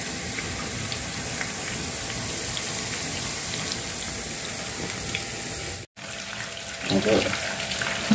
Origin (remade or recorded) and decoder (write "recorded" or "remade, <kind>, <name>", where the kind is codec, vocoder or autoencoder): recorded